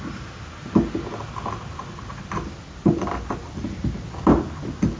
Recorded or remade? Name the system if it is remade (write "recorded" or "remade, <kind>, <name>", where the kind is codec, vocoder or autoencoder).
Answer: recorded